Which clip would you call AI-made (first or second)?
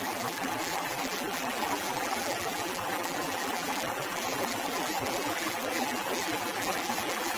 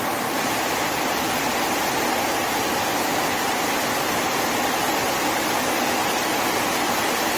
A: first